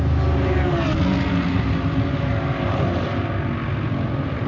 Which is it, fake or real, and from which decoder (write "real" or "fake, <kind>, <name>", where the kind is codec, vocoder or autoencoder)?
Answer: real